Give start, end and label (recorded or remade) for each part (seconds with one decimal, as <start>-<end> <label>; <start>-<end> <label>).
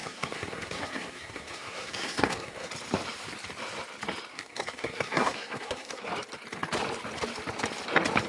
0.0-2.7 remade; 2.7-4.3 recorded; 4.3-6.1 remade; 6.1-8.3 recorded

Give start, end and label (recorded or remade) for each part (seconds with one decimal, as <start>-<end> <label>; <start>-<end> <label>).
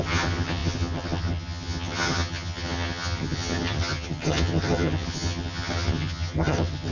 0.0-6.9 remade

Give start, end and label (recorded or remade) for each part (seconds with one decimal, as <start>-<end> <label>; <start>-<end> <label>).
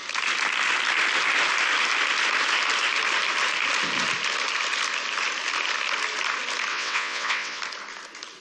0.0-6.7 recorded; 6.7-7.6 remade; 7.6-8.4 recorded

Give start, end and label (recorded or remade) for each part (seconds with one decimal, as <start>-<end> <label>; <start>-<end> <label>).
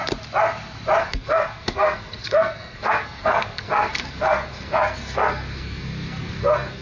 0.0-1.0 recorded; 1.0-6.8 remade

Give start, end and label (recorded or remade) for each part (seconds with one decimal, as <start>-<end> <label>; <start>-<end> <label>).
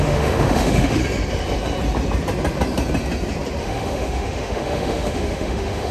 0.0-1.0 remade; 1.0-3.6 recorded; 3.6-5.9 remade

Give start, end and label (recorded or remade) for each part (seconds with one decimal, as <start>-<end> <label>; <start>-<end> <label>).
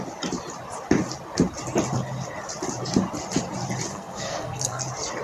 0.0-3.9 recorded; 3.9-4.8 remade; 4.8-5.2 recorded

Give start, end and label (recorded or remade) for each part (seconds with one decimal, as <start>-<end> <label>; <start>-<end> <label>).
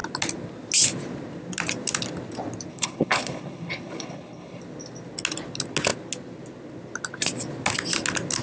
0.0-2.7 recorded; 2.7-4.6 remade; 4.6-8.4 recorded